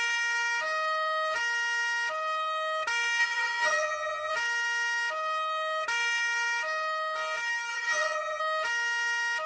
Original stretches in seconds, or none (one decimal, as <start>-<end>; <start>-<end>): 0.0-3.2; 4.3-7.7; 8.4-9.5